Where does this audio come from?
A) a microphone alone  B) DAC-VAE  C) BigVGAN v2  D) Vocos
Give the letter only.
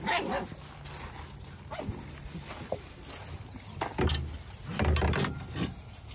A